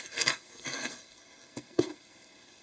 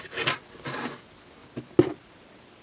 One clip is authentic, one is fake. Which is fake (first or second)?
first